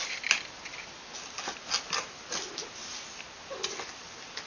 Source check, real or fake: real